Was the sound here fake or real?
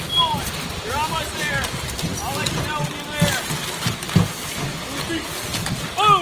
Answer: real